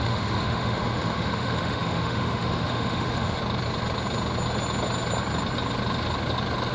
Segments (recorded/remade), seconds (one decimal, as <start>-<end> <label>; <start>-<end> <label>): 0.0-3.4 remade; 3.4-6.7 recorded